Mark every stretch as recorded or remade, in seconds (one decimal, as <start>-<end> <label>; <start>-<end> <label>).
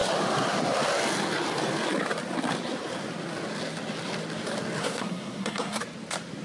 0.0-4.8 recorded; 4.8-5.8 remade; 5.8-6.4 recorded